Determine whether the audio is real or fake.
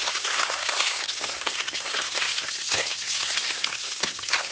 fake